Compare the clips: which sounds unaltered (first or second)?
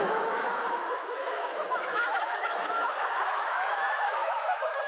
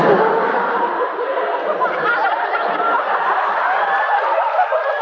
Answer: second